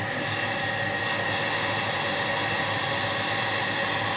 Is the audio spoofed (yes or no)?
no